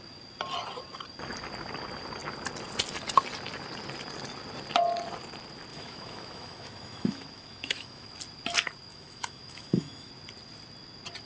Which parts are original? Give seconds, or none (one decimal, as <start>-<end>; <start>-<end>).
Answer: 0.0-5.7; 8.1-8.9; 10.1-11.3